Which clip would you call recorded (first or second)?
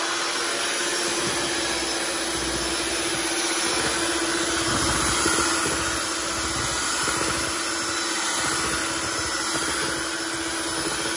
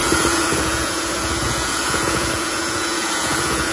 first